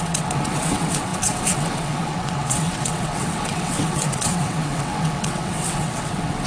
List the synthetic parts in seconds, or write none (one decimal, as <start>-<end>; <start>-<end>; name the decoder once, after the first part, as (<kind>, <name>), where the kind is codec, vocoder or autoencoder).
0.0-6.5 (vocoder, WaveNeXt)

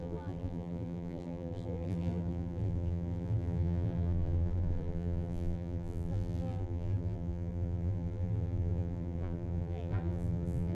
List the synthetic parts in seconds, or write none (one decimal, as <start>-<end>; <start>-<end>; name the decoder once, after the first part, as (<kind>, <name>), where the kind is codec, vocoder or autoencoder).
0.0-10.7 (vocoder, BigVGAN v2)

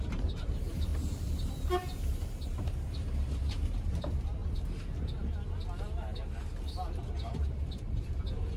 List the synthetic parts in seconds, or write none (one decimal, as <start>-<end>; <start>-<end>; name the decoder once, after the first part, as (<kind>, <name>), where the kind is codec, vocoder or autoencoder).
0.0-4.4 (vocoder, BigVGAN v2); 7.1-8.6

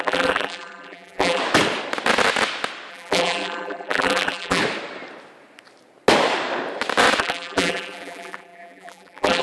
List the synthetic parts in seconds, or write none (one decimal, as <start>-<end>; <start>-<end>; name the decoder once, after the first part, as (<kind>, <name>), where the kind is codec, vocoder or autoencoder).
0.0-1.4 (vocoder, BigVGAN v2); 2.9-4.6; 7.2-9.4

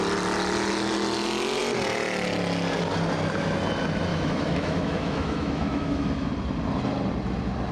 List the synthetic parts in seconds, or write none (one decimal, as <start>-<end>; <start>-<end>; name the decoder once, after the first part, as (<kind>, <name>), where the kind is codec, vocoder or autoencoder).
4.1-6.3 (autoencoder, DAC-VAE)

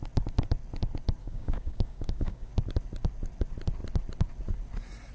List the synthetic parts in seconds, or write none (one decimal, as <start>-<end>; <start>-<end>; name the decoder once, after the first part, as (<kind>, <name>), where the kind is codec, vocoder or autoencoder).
1.2-2.5 (codec, DAC)

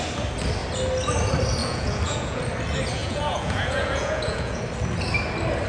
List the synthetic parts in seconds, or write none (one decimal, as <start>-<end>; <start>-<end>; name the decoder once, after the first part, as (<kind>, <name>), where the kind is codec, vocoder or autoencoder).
1.6-2.4 (vocoder, Vocos); 3.0-4.6

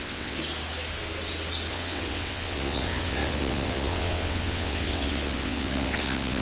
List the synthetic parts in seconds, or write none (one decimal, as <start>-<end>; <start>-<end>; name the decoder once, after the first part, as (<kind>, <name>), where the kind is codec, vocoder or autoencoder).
0.0-0.4 (vocoder, WaveNeXt); 1.7-6.4